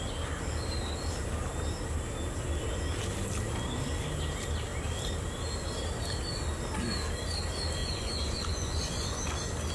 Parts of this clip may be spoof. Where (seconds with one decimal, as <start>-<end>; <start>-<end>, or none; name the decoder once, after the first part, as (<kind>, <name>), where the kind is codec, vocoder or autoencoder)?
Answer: 7.8-9.2 (vocoder, Vocos)